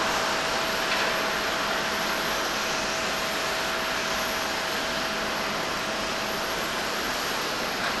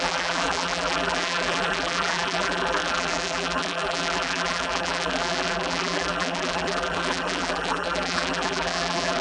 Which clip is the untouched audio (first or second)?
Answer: first